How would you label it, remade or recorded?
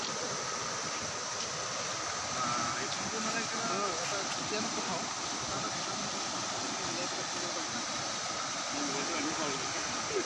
recorded